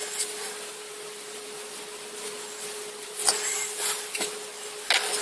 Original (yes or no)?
yes